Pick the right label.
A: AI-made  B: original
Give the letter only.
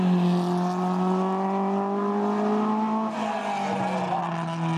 B